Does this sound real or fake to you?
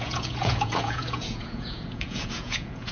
fake